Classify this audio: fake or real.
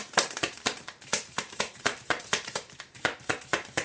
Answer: fake